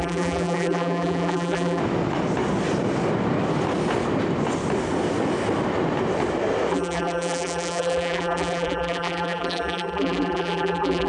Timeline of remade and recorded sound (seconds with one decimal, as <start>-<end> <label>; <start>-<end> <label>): 0.0-1.8 remade; 1.8-6.7 recorded; 6.7-11.1 remade